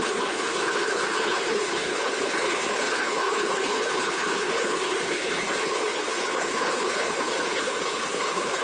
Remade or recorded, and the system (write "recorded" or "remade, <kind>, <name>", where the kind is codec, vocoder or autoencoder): remade, codec, HILCodec